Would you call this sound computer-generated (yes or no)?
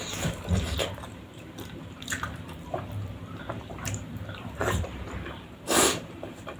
yes